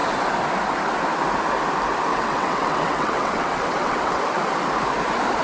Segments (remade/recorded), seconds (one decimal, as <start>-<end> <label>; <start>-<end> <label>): 0.0-2.1 recorded; 2.1-4.2 remade; 4.2-5.4 recorded